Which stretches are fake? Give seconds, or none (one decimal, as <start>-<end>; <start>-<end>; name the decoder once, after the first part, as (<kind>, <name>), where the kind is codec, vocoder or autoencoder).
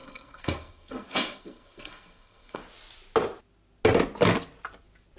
0.0-2.6 (codec, SNAC)